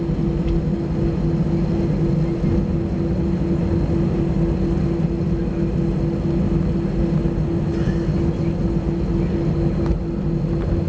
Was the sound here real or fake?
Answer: real